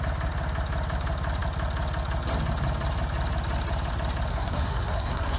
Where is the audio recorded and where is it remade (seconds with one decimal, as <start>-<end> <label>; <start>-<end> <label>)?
0.0-4.3 recorded; 4.3-5.4 remade

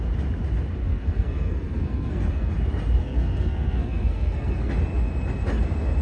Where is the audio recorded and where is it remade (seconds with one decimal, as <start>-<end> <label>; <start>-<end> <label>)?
0.0-0.8 recorded; 0.8-2.5 remade; 2.5-3.0 recorded; 3.0-4.7 remade; 4.7-6.0 recorded

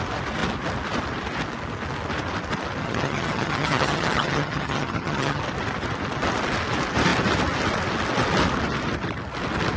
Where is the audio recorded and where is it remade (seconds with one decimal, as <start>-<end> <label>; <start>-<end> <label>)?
0.0-2.8 recorded; 2.8-5.4 remade; 5.4-9.8 recorded

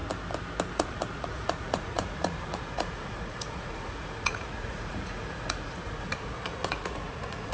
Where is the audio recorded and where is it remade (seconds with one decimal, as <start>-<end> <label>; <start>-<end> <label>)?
0.0-0.7 recorded; 0.7-7.5 remade

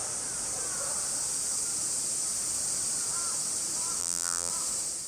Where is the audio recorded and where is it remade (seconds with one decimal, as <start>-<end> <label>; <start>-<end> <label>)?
0.0-4.0 recorded; 4.0-4.5 remade; 4.5-5.1 recorded